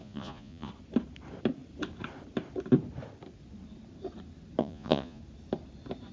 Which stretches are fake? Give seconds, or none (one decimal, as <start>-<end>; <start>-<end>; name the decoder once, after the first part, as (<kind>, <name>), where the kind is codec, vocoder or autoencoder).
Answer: 0.0-0.7 (vocoder, Vocos); 4.6-5.2

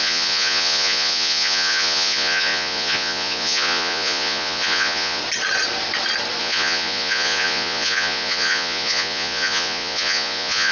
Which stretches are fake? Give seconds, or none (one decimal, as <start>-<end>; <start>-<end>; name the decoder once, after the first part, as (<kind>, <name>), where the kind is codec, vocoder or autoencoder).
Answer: 0.0-5.2 (vocoder, Vocos); 6.4-10.7

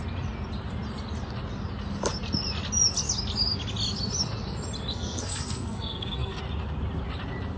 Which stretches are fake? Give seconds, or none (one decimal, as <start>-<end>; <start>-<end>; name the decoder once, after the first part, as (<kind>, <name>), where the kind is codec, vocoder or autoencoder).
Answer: 4.9-6.4 (codec, SNAC)

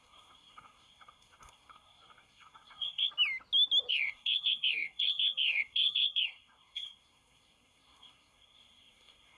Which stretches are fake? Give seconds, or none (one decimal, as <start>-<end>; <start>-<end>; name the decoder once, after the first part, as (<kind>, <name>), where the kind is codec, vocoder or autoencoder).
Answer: 0.0-3.1 (codec, SNAC); 3.9-9.4

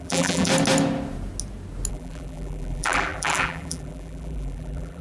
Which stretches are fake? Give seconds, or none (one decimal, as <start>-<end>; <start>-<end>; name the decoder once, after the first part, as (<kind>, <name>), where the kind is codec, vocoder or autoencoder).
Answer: 0.0-0.5 (vocoder, BigVGAN v2); 1.9-5.0

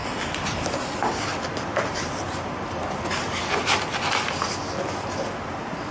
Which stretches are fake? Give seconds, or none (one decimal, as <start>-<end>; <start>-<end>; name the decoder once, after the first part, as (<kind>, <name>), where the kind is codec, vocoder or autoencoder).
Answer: 0.0-3.5 (vocoder, BigVGAN v2)

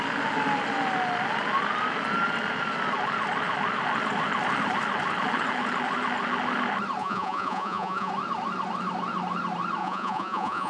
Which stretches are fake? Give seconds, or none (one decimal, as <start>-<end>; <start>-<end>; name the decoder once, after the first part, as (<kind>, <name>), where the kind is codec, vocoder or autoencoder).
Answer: 7.0-8.1 (vocoder, Vocos); 9.8-10.7

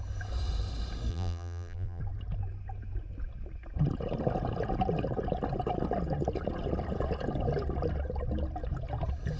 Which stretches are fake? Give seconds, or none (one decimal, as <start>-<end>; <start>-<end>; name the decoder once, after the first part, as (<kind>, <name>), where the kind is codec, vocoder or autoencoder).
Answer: 1.1-2.0 (vocoder, BigVGAN v2)